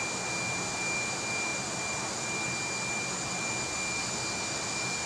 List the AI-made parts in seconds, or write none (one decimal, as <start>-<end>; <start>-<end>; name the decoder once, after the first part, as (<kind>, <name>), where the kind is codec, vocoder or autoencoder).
none